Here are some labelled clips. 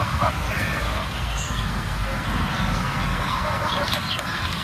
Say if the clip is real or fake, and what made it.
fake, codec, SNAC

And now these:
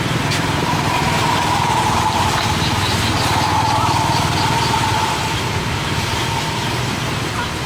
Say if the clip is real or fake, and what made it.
real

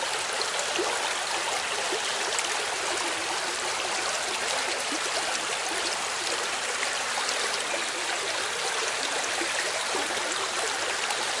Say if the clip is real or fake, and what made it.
real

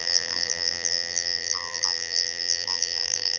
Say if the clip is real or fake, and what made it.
fake, vocoder, BigVGAN v2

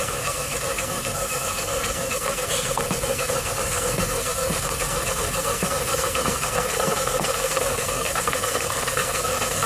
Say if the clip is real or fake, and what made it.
fake, codec, SNAC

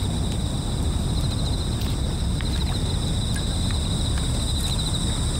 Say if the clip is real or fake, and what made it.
real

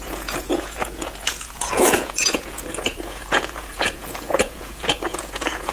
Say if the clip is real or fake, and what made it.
fake, vocoder, Vocos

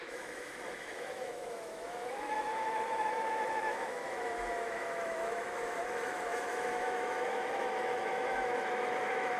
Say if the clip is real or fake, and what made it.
fake, autoencoder, DAC-VAE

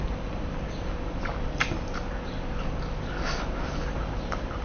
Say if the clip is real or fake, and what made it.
real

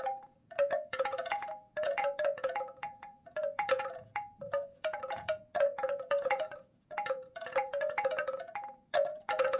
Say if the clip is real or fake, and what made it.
fake, vocoder, Vocos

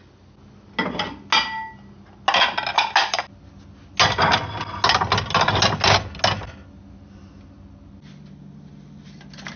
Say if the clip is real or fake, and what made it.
real